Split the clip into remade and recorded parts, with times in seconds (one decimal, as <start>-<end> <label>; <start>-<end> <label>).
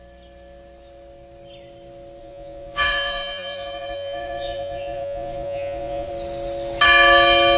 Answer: 0.0-2.2 recorded; 2.2-6.1 remade; 6.1-7.6 recorded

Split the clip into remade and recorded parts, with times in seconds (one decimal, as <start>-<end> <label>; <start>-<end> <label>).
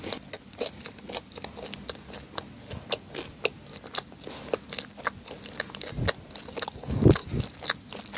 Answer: 0.0-8.2 recorded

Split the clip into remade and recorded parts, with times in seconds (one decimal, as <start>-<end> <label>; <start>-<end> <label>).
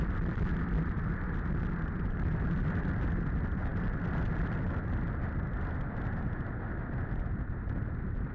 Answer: 0.0-3.7 recorded; 3.7-4.3 remade; 4.3-8.3 recorded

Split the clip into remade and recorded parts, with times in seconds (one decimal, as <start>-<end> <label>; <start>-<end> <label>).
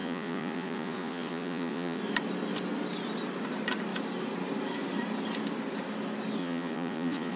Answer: 0.0-2.0 remade; 2.0-6.4 recorded; 6.4-7.4 remade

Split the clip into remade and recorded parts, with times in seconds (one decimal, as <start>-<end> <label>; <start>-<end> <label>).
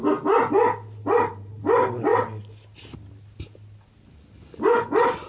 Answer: 0.0-1.0 recorded; 1.0-2.1 remade; 2.1-5.3 recorded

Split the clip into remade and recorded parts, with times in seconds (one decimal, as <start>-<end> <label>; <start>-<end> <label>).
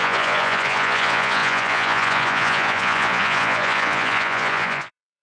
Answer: 0.0-5.2 remade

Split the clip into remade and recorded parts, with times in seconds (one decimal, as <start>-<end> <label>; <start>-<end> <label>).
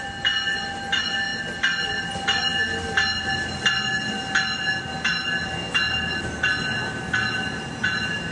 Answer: 0.0-8.3 recorded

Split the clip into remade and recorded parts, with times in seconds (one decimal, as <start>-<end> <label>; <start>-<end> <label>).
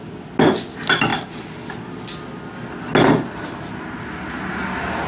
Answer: 0.0-5.1 recorded